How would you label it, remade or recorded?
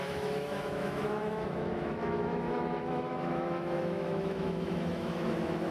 remade